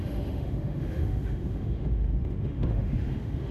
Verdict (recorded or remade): remade